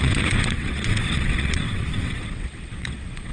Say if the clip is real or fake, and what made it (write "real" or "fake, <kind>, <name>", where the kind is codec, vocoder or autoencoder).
fake, vocoder, WaveNeXt